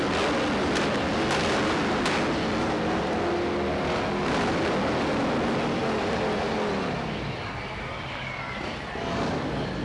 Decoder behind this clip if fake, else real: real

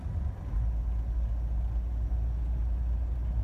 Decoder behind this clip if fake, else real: real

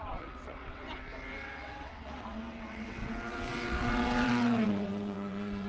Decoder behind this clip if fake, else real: fake, vocoder, WaveNeXt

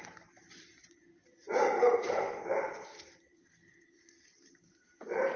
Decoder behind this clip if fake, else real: fake, vocoder, BigVGAN v2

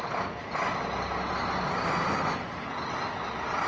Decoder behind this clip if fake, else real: real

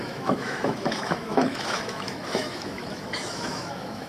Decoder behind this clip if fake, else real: fake, autoencoder, DAC-VAE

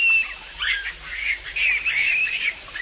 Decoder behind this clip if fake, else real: real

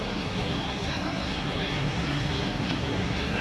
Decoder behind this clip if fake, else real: fake, codec, SNAC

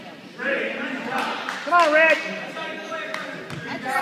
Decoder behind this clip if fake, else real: real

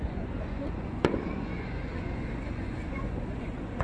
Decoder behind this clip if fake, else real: fake, vocoder, Vocos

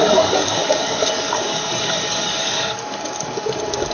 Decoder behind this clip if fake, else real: fake, codec, DAC